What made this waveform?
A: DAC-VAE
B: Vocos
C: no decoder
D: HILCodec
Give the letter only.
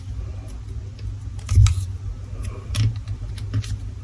C